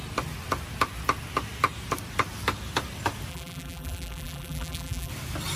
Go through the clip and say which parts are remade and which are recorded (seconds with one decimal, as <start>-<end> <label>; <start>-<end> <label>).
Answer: 0.0-3.3 recorded; 3.3-5.1 remade; 5.1-5.6 recorded